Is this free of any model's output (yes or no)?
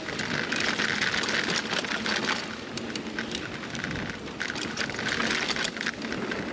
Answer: yes